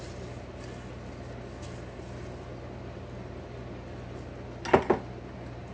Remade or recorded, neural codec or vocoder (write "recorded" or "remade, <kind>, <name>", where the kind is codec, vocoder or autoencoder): recorded